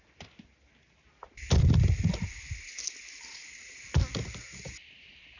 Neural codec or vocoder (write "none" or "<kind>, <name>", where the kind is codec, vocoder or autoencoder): none